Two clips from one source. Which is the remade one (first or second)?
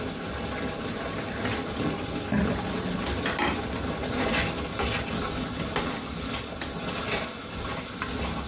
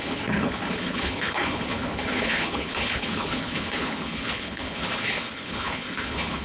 second